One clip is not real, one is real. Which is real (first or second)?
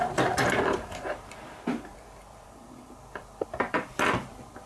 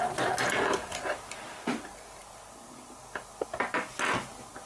second